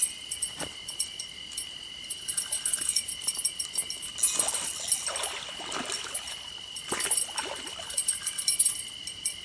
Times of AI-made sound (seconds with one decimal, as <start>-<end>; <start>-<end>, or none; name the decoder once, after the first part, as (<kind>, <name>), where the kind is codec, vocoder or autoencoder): 0.0-3.8 (vocoder, BigVGAN v2); 6.0-9.4